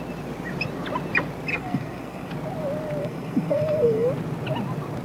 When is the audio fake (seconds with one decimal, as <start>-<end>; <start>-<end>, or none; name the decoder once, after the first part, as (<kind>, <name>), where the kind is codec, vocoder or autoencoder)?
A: 1.5-2.3 (codec, SNAC); 3.0-4.1